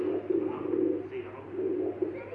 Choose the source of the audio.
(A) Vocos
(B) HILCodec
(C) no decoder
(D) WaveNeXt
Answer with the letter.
C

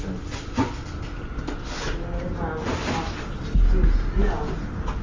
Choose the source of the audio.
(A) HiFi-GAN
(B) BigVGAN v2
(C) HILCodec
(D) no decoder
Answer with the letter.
D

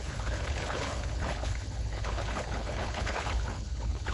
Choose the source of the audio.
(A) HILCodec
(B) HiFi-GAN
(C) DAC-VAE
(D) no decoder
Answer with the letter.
A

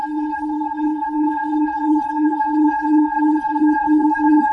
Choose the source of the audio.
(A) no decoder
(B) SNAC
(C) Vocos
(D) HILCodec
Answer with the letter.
D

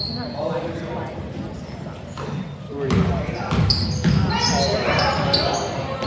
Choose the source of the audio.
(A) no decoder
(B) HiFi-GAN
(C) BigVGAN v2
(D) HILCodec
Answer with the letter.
A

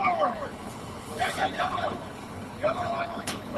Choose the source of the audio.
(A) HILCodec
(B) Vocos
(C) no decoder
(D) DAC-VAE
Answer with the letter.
A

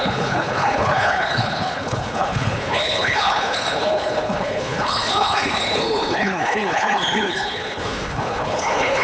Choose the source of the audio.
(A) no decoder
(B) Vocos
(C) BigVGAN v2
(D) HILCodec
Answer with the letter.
D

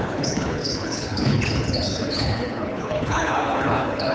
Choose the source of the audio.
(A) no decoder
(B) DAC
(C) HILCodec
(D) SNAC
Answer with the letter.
C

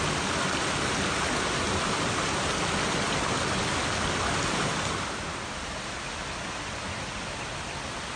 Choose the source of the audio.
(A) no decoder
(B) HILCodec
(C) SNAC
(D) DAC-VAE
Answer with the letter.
A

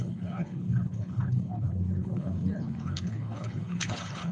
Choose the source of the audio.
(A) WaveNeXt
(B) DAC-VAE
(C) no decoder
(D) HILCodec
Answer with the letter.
D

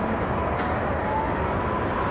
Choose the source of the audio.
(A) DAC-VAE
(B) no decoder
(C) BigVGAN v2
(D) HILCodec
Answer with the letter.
B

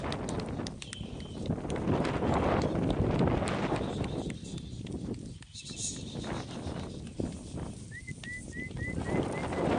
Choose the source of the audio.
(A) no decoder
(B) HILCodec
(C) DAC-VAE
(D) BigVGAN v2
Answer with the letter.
A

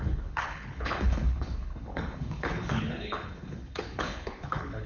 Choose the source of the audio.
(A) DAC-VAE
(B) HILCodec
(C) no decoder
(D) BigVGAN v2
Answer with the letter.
B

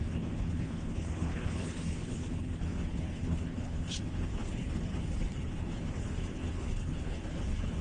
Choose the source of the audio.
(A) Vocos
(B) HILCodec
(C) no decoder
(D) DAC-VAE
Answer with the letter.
B